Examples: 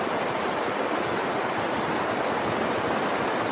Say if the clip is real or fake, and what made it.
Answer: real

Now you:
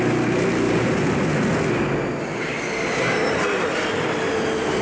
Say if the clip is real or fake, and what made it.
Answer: real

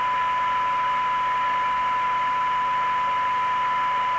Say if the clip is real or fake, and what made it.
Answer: real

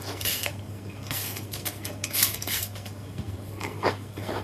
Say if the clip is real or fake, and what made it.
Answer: fake, codec, SNAC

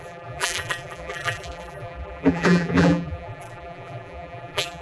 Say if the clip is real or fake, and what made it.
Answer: fake, vocoder, BigVGAN v2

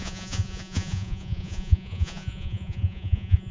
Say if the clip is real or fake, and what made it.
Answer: fake, vocoder, Vocos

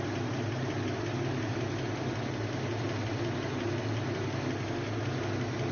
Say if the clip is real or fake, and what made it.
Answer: real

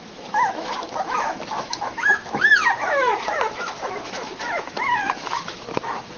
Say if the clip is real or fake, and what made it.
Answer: fake, autoencoder, DAC-VAE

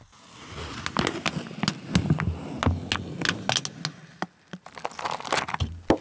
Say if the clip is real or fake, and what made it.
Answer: real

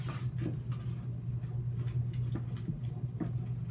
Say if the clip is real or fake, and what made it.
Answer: real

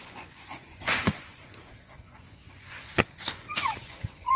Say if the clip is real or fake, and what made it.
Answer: fake, vocoder, Vocos